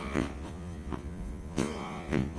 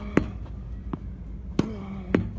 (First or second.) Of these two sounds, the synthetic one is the first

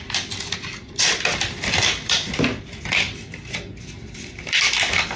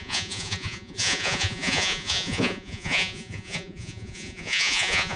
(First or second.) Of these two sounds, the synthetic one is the second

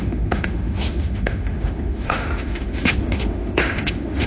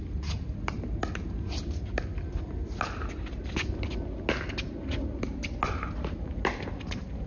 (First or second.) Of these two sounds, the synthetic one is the first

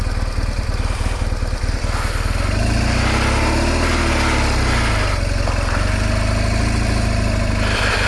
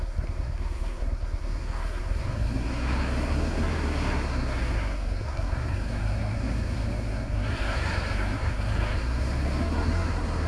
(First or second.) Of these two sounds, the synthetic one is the second